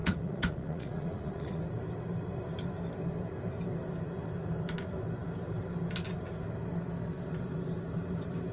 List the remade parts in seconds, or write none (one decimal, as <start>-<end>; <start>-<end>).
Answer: 0.0-1.6